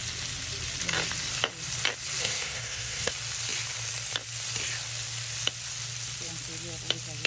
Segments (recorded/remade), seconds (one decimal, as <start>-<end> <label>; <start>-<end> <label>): 0.0-2.2 recorded; 2.2-3.1 remade; 3.1-7.3 recorded